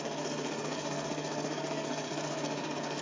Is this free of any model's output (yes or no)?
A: no